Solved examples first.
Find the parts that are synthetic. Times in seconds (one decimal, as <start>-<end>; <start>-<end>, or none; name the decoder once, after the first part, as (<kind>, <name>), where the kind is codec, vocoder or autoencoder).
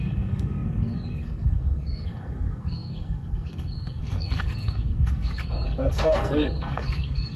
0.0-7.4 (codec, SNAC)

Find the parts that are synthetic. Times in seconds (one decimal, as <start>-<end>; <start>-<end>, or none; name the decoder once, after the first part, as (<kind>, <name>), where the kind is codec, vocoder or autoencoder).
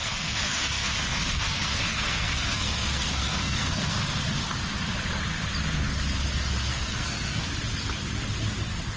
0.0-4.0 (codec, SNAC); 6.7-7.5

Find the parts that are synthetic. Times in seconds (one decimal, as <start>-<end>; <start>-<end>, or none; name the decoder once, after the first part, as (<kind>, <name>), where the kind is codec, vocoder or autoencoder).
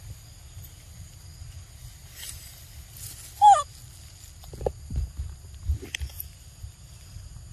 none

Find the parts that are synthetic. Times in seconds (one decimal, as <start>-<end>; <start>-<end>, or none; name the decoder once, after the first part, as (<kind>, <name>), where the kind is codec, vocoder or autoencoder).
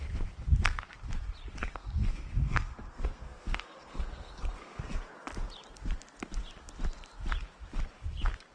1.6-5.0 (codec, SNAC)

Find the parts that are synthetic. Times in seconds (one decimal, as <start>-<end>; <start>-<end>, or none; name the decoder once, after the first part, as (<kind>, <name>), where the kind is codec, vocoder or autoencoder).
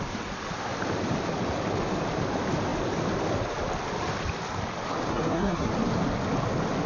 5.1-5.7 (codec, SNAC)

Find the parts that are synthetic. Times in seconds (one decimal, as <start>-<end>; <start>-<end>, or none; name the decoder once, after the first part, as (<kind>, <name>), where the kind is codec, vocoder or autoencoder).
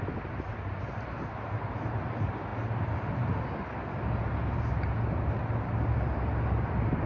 none